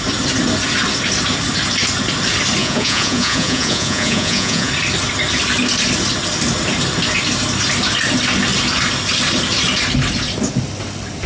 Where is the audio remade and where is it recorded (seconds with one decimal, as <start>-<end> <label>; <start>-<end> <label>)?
0.0-2.6 recorded; 2.6-4.7 remade; 4.7-11.3 recorded